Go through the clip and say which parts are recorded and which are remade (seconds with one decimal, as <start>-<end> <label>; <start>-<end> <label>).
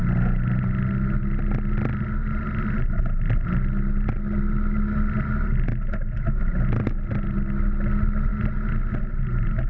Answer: 0.0-9.7 recorded